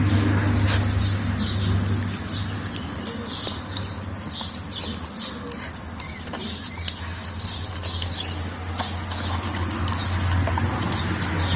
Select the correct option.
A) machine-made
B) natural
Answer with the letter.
B